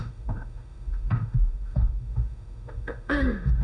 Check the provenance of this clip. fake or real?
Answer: fake